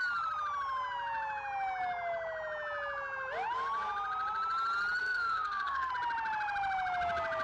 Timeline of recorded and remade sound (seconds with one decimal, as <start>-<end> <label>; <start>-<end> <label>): 0.0-5.0 recorded; 5.0-5.9 remade; 5.9-7.4 recorded